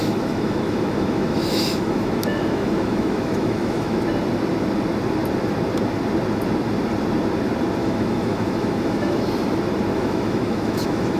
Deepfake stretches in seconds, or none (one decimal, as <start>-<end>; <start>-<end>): 0.0-4.0; 7.8-9.3; 9.9-11.2

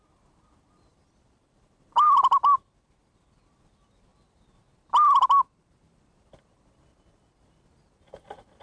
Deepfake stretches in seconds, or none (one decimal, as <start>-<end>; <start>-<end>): 0.9-3.4